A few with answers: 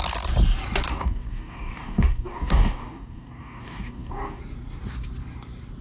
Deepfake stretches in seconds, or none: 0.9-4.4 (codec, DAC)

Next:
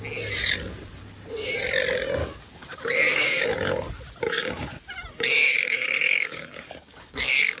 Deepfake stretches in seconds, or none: 2.2-3.4 (codec, DAC); 5.4-7.6

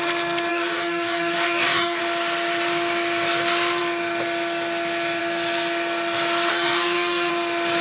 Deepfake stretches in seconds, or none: 0.5-2.0 (codec, DAC); 6.5-7.3

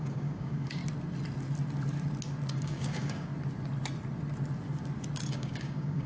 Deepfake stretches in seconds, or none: 0.0-0.8 (codec, DAC); 2.5-3.3; 5.3-6.1

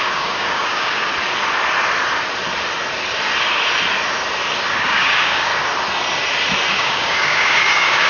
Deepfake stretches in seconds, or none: 0.0-1.1 (codec, DAC); 4.7-5.5; 6.7-8.1

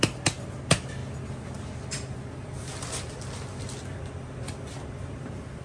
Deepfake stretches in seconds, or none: none

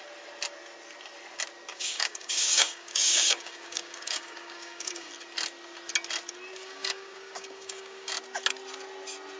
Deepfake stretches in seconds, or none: 1.7-5.1 (codec, DAC); 6.5-8.1

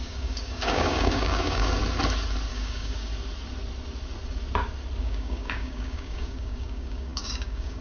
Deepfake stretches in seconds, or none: 0.0-1.8 (codec, DAC); 2.5-3.1; 5.0-7.8